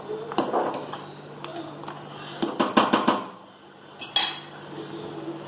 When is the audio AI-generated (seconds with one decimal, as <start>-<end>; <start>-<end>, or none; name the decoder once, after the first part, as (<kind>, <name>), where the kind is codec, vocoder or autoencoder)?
none